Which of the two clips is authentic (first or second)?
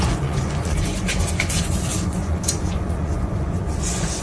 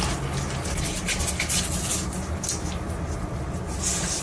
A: second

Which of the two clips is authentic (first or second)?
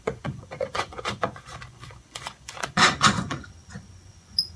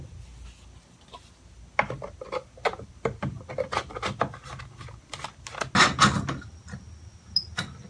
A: second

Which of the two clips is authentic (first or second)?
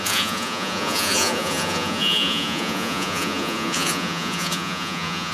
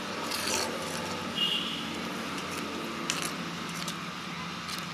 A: second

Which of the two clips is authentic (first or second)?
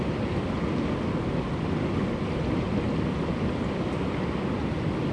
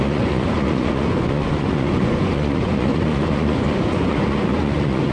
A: first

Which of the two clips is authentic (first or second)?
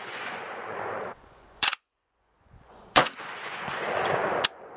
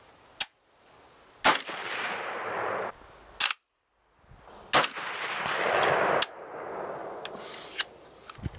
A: second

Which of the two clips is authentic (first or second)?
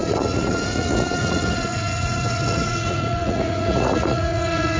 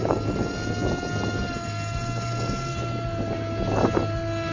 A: second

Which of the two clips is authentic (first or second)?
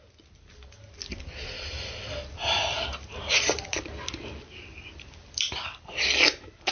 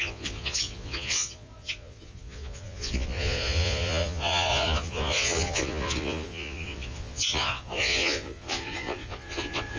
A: first